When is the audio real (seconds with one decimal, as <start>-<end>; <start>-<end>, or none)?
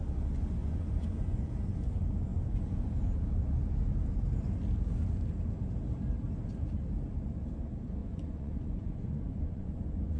0.0-0.6; 1.5-8.0